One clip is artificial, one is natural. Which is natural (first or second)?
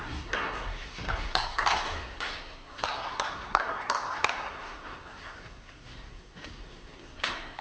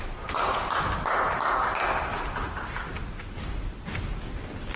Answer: second